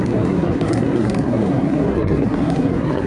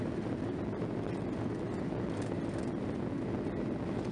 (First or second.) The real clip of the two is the second